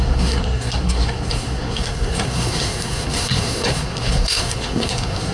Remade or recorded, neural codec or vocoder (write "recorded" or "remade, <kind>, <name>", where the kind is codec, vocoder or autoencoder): remade, codec, SNAC